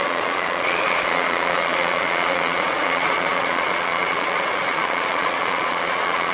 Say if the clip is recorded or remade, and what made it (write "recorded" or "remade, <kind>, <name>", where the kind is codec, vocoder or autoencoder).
remade, vocoder, Vocos